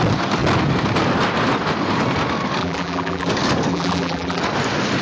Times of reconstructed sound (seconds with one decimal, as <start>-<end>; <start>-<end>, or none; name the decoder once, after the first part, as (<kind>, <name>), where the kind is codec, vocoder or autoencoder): 2.6-3.3 (vocoder, BigVGAN v2); 3.7-4.4